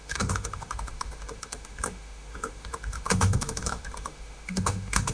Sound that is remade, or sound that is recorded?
remade